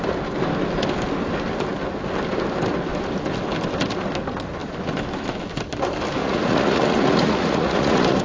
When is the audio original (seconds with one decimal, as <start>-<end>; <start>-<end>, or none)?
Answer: 0.0-6.2